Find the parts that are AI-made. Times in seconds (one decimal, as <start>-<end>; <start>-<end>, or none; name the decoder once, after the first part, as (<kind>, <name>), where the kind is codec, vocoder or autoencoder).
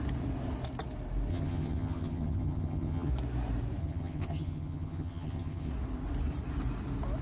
1.3-3.1 (vocoder, HiFi-GAN); 3.8-5.7